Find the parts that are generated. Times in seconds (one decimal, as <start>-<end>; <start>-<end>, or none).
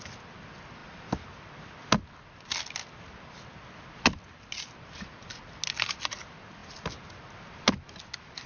none